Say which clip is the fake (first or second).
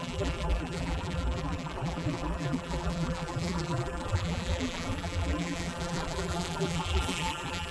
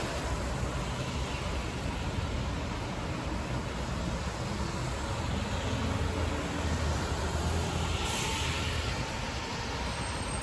first